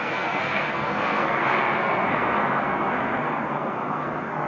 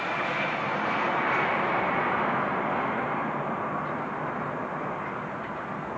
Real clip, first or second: second